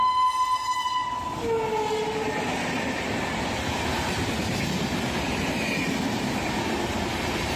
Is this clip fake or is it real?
real